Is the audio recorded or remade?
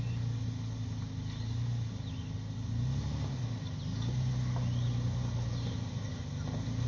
recorded